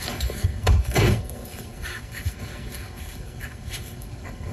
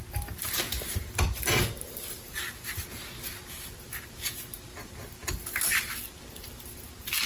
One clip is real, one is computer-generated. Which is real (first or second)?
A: second